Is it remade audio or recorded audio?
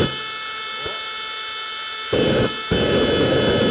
recorded